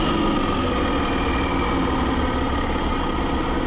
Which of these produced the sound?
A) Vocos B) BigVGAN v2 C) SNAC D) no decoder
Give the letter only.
D